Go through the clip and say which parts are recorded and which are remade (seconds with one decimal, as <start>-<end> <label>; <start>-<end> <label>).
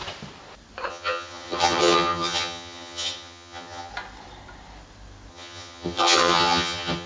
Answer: 0.0-0.9 recorded; 0.9-3.9 remade; 3.9-5.3 recorded; 5.3-7.1 remade